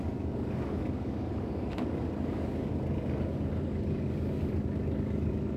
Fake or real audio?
fake